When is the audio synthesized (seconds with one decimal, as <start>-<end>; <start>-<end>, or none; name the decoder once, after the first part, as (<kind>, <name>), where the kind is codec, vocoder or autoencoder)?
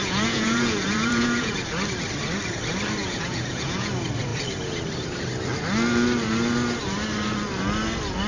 0.0-1.6 (vocoder, Vocos); 3.0-3.9